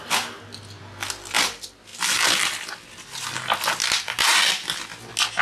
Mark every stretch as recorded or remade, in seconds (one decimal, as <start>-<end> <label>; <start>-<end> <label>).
0.0-5.4 recorded